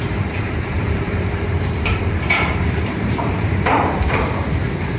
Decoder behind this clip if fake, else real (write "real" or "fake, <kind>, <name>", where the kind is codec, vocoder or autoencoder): fake, vocoder, BigVGAN v2